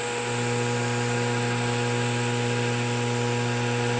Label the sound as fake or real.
real